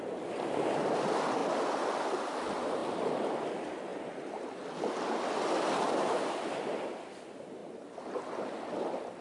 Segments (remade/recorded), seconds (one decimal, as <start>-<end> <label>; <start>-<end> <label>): 0.0-9.2 recorded